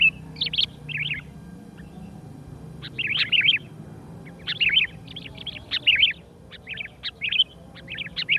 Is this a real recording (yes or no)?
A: yes